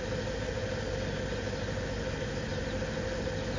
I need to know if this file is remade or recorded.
recorded